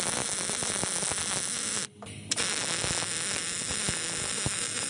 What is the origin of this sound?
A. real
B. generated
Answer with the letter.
A